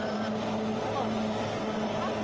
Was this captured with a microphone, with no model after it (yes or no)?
yes